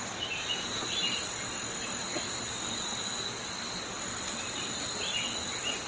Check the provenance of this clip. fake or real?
real